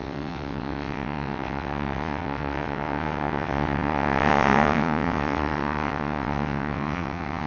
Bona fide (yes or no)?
no